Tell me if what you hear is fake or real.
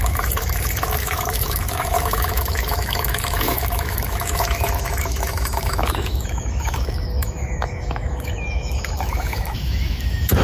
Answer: fake